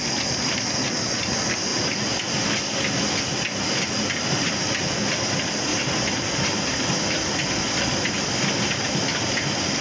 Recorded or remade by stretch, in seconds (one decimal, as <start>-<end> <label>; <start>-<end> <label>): 0.0-5.7 remade; 5.7-9.8 recorded